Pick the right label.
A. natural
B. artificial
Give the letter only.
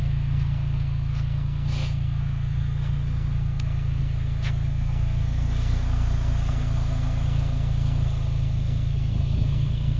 B